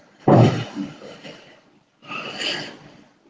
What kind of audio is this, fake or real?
fake